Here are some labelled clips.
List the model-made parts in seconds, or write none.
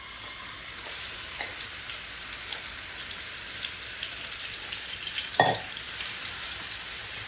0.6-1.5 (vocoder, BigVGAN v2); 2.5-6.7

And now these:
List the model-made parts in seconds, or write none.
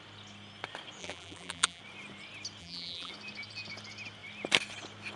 1.0-1.8 (vocoder, BigVGAN v2); 2.6-3.1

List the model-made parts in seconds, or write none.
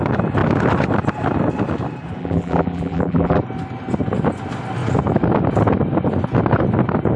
2.2-3.4 (vocoder, BigVGAN v2)